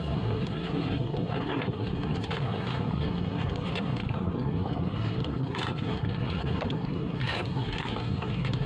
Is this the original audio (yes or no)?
no